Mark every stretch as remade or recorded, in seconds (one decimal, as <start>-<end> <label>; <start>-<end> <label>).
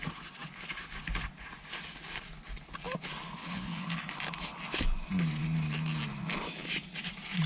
0.0-3.4 recorded; 3.4-4.1 remade; 4.1-7.5 recorded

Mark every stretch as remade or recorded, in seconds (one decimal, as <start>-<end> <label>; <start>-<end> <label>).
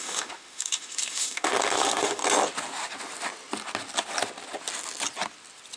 0.0-2.2 remade; 2.2-5.8 recorded